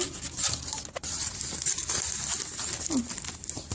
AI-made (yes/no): no